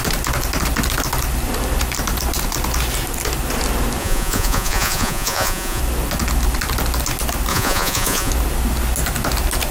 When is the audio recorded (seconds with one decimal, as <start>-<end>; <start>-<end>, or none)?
0.0-4.0; 5.8-7.5; 8.3-9.7